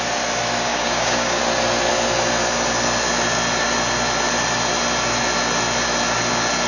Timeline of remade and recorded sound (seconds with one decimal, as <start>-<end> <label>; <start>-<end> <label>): 0.0-0.7 recorded; 0.7-1.4 remade; 1.4-6.7 recorded